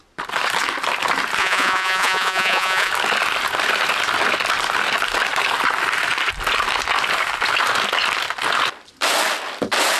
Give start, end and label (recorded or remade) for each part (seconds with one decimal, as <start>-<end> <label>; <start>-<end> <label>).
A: 0.0-1.4 recorded; 1.4-2.9 remade; 2.9-10.0 recorded